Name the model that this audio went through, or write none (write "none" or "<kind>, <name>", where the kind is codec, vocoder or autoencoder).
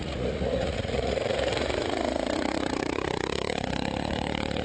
vocoder, Vocos